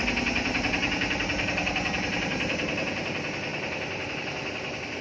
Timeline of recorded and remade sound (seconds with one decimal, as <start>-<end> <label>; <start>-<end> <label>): 0.0-5.0 recorded